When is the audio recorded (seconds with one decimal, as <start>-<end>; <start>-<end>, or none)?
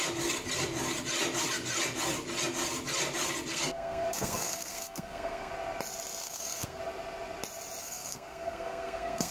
0.0-3.5; 5.5-6.2; 6.8-7.8